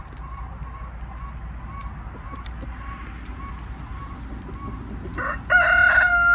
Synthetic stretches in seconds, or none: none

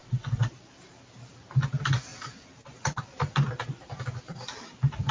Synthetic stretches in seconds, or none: 0.0-0.5

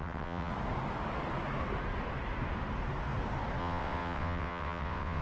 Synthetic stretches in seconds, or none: 0.0-0.5; 3.6-5.2

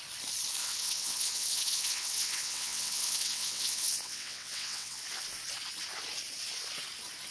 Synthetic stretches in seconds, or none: 0.6-5.0

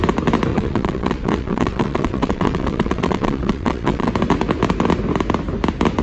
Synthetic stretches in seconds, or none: 0.5-4.1